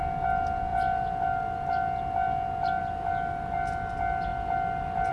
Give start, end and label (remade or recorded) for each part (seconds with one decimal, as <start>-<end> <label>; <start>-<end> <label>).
0.0-5.1 recorded